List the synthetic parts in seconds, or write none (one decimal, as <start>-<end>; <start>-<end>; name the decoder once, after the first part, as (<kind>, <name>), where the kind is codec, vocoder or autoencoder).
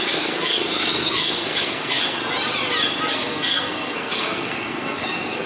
0.0-2.2 (codec, SNAC); 3.1-5.5